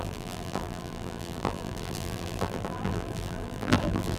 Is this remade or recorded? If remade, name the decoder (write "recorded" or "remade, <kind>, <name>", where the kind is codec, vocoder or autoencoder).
remade, vocoder, BigVGAN v2